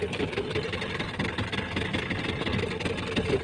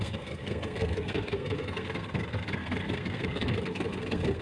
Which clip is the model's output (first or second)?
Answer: second